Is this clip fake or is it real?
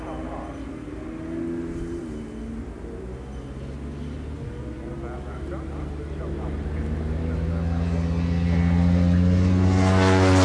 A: real